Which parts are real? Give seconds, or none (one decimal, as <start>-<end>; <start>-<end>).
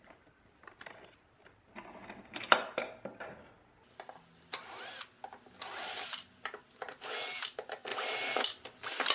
0.0-9.1